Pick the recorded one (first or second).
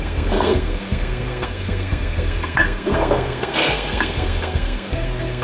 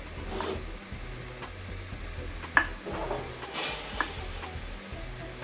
second